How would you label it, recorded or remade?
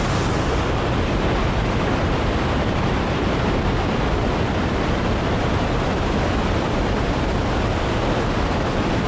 recorded